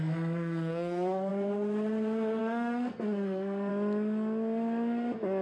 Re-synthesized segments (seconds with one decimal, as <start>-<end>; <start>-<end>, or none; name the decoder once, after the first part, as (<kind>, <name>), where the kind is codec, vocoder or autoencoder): 0.0-1.3 (codec, SNAC); 2.4-3.7